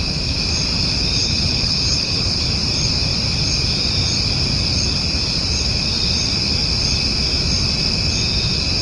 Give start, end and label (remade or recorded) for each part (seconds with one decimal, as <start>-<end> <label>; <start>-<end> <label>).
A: 0.0-1.2 recorded; 1.2-2.4 remade; 2.4-8.8 recorded